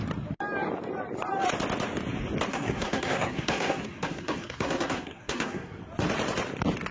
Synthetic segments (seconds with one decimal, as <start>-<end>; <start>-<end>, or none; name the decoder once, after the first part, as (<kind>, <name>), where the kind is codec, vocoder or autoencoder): 2.5-5.8 (codec, SNAC)